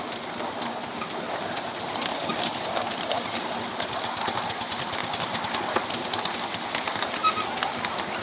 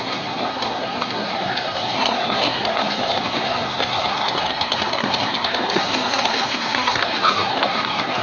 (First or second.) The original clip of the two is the first